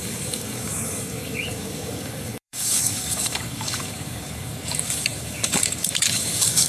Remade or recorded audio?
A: remade